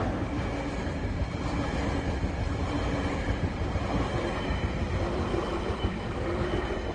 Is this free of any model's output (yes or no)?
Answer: yes